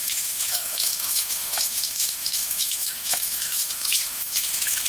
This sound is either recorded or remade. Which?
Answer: remade